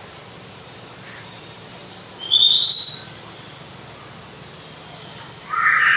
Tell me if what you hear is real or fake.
real